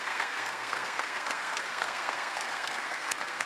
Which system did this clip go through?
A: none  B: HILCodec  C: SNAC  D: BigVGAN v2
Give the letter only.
C